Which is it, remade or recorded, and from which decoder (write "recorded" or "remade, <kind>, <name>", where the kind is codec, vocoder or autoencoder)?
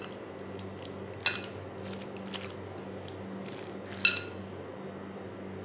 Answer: recorded